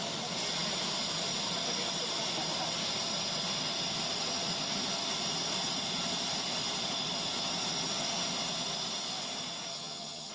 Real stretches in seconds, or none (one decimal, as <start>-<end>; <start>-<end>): 0.0-9.7